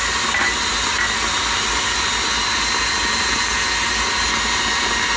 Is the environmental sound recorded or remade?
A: recorded